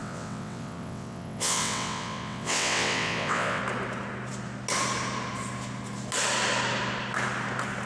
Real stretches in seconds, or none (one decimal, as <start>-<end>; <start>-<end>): 3.6-7.9